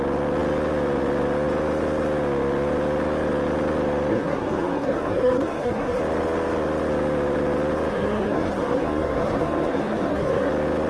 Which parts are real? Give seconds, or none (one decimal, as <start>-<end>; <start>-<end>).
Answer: 0.0-4.1; 6.0-7.9; 10.5-10.9